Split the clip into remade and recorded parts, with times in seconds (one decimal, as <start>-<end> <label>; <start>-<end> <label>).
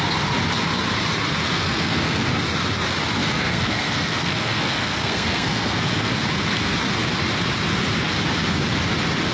0.0-1.4 recorded; 1.4-2.3 remade; 2.3-3.2 recorded; 3.2-6.1 remade; 6.1-9.3 recorded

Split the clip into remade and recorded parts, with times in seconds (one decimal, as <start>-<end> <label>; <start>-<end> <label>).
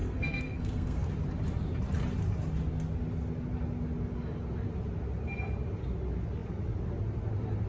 0.0-1.1 remade; 1.1-7.7 recorded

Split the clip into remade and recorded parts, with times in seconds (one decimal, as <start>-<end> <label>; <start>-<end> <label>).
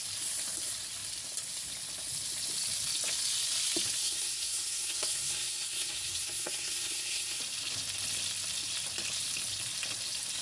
0.0-4.0 recorded; 4.0-7.4 remade; 7.4-10.4 recorded